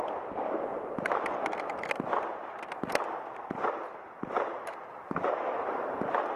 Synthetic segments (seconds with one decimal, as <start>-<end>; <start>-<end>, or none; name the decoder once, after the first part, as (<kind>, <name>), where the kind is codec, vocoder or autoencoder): none

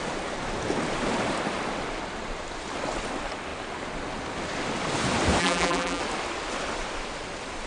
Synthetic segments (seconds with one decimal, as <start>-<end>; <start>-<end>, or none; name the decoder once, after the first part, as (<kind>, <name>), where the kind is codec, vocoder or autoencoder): 5.4-6.0 (vocoder, BigVGAN v2)